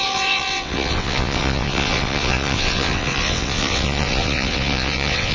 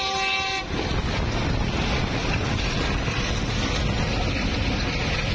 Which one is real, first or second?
second